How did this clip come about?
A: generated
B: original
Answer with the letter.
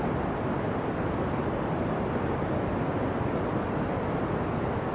B